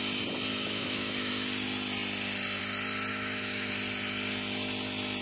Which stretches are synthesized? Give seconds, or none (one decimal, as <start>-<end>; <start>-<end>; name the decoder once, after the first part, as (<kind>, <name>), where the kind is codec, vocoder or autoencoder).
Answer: 0.5-1.3 (autoencoder, DAC-VAE); 3.1-3.7